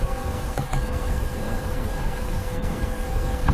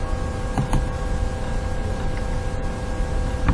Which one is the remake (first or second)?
first